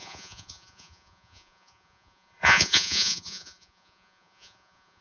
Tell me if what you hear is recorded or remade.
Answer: remade